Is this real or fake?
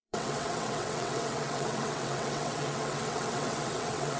fake